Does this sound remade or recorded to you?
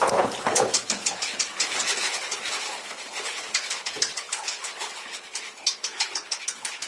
remade